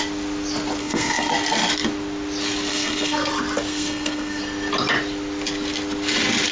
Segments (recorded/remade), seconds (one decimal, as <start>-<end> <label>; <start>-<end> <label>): 0.0-0.8 recorded; 0.8-1.3 remade; 1.3-2.7 recorded; 2.7-3.3 remade; 3.3-3.7 recorded; 3.7-4.4 remade; 4.4-6.5 recorded